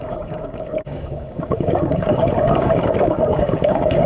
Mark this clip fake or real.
fake